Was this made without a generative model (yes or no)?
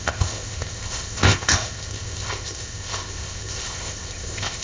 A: no